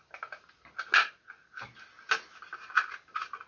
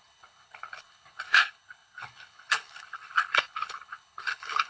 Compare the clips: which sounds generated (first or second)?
second